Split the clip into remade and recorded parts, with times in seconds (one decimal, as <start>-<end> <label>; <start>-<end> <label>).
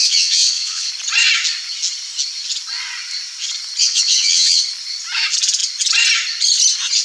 0.0-0.9 remade; 0.9-3.8 recorded; 3.8-4.6 remade; 4.6-7.0 recorded